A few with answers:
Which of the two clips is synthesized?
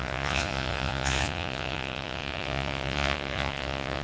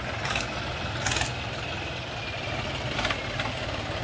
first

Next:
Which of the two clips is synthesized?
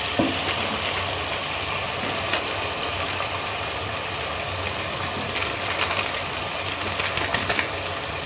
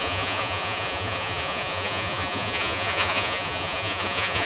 second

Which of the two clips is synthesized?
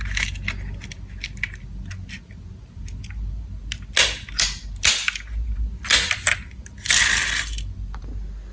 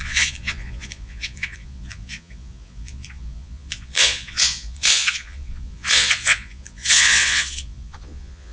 second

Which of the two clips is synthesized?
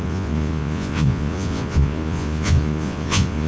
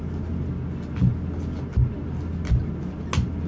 first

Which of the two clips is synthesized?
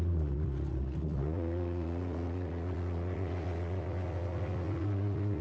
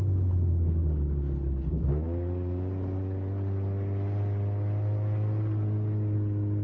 first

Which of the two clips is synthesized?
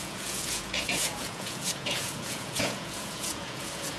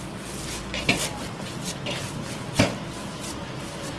first